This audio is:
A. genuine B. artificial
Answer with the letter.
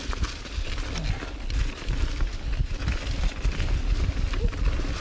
A